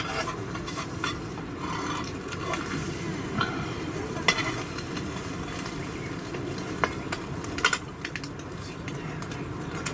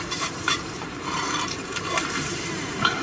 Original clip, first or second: first